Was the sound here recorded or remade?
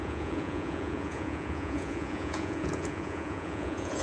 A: remade